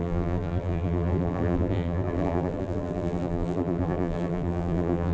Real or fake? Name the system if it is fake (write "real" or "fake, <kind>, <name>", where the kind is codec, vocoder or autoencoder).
fake, vocoder, BigVGAN v2